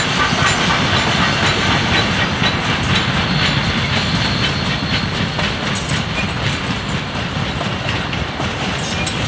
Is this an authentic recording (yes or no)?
yes